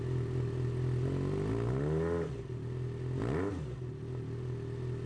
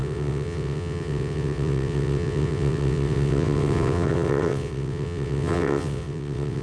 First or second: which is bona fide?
first